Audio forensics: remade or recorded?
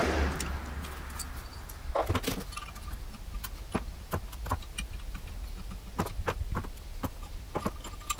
recorded